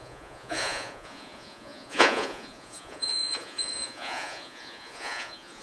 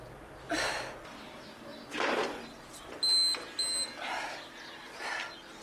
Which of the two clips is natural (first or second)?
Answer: second